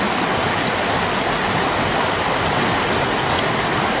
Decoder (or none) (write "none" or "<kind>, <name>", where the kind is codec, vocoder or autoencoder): none